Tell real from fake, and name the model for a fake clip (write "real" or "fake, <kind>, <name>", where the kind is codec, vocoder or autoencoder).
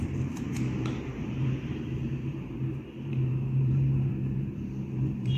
fake, vocoder, BigVGAN v2